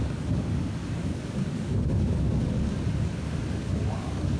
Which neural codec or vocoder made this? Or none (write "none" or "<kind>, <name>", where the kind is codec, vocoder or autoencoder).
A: codec, DAC